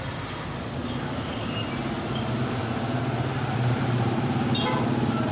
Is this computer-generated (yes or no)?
no